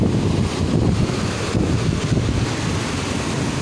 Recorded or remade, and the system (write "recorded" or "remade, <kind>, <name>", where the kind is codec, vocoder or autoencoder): recorded